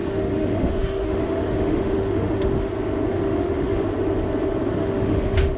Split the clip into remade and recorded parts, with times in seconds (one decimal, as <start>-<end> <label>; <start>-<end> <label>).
0.0-2.7 remade; 2.7-3.1 recorded; 3.1-3.8 remade; 3.8-4.8 recorded; 4.8-5.6 remade